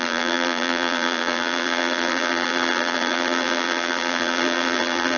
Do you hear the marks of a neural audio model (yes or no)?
yes